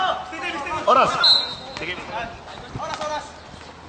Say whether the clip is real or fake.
real